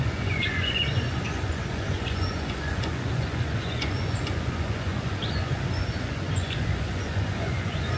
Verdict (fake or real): fake